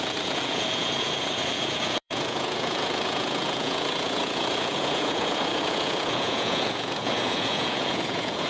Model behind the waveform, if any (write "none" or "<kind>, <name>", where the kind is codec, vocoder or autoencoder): vocoder, Vocos